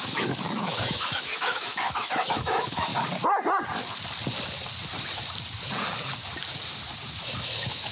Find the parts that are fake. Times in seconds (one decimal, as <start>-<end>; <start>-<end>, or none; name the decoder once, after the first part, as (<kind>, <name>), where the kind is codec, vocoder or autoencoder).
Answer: 0.0-2.9 (autoencoder, DAC-VAE); 7.4-7.9